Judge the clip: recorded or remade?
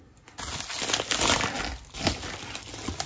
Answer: recorded